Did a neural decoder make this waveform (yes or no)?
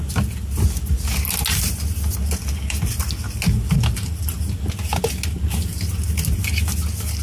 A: no